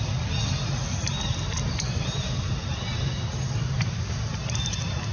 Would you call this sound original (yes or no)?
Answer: yes